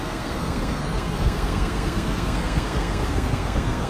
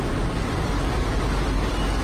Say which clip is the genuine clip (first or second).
second